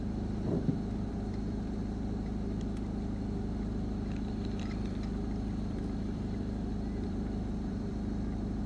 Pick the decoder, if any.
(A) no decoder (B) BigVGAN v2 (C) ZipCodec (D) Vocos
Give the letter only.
B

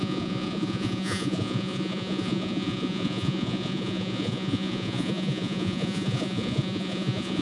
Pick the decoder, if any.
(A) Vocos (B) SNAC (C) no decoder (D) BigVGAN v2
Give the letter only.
A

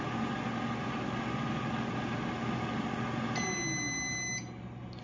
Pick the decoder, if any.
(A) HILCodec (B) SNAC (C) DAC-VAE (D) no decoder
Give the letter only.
D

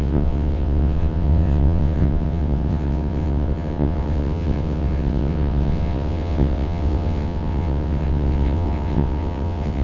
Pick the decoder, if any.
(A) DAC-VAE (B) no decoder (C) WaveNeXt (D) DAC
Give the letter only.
C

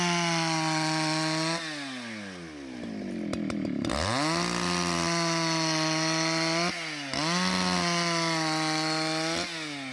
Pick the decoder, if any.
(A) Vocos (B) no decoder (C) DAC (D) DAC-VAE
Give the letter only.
B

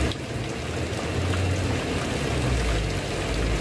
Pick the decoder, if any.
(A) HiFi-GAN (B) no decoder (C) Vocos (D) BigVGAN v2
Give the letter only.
B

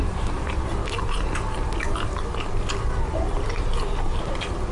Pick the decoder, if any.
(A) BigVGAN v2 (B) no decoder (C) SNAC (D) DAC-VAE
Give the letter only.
B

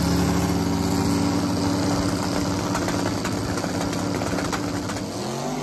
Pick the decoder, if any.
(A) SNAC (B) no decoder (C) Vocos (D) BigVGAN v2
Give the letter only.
B